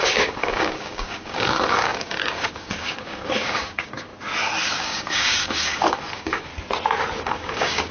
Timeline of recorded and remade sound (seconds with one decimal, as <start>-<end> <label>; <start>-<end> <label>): 0.0-4.1 remade; 4.1-4.8 recorded; 4.8-6.5 remade; 6.5-7.2 recorded; 7.2-7.9 remade